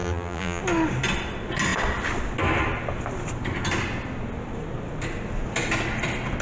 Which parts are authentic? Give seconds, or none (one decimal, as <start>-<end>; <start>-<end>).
0.6-6.4